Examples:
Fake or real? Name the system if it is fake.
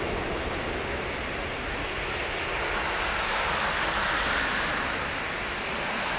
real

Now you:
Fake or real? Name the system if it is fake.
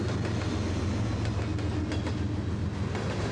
real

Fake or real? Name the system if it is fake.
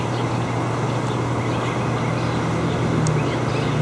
real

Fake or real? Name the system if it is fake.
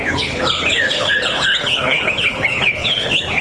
fake, codec, HILCodec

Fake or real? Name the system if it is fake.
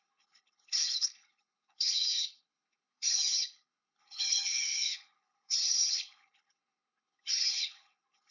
fake, codec, HILCodec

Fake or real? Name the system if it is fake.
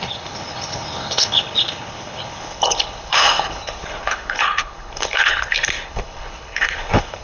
fake, codec, HILCodec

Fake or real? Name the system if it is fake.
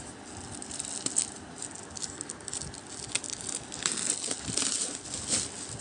real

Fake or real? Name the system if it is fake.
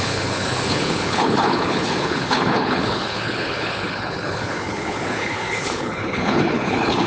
fake, codec, HILCodec